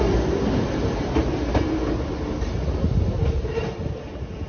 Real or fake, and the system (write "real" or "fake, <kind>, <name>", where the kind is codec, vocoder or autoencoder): real